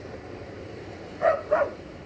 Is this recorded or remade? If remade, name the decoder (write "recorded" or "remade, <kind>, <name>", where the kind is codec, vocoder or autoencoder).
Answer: remade, vocoder, BigVGAN v2